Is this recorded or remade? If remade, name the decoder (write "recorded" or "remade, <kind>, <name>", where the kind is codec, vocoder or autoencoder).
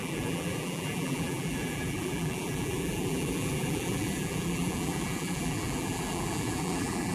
remade, vocoder, BigVGAN v2